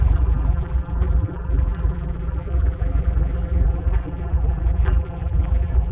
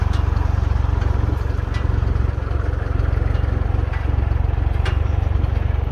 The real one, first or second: second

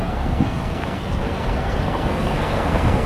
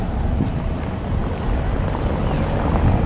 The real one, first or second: second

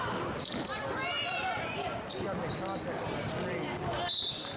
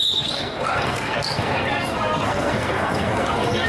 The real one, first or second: first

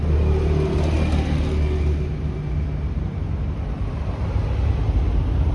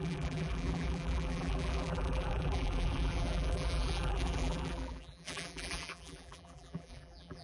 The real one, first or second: first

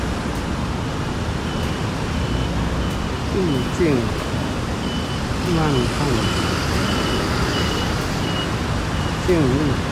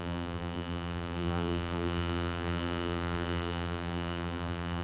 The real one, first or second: first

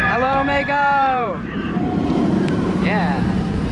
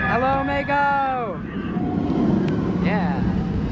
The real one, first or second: second